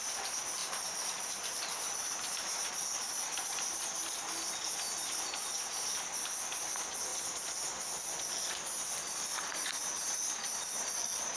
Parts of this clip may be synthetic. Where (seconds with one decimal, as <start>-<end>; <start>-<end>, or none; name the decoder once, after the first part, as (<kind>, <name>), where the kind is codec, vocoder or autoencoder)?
0.6-2.7 (vocoder, BigVGAN v2)